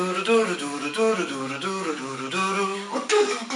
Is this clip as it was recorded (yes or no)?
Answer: no